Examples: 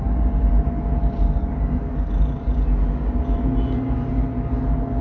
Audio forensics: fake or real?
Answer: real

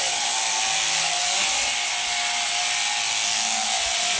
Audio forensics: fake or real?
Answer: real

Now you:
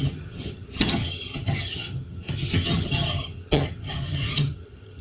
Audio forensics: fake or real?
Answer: fake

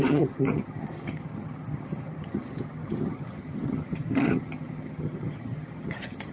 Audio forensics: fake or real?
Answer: fake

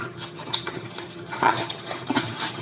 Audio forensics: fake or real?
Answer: fake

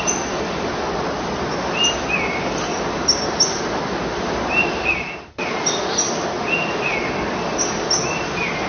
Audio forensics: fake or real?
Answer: real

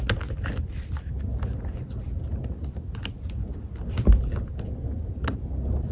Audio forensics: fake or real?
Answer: real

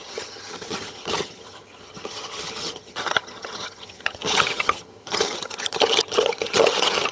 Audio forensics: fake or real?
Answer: fake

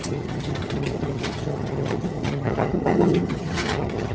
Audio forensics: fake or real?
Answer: fake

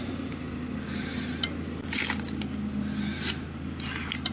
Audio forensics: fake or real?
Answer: real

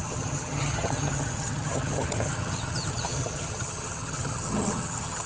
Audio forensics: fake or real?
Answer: fake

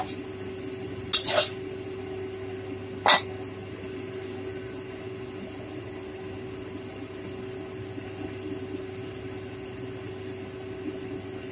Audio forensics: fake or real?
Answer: real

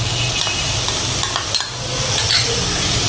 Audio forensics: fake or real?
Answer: real